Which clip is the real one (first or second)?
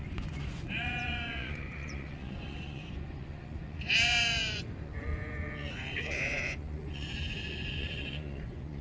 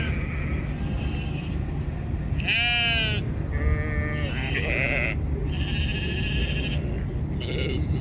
second